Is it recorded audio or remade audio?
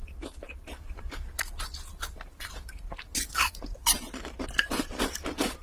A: remade